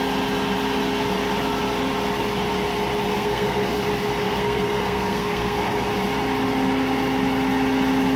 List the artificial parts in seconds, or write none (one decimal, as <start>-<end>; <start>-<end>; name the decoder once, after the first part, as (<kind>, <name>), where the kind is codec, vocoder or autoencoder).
3.1-3.8 (codec, SNAC); 4.2-5.9